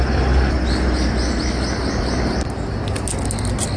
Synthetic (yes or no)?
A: no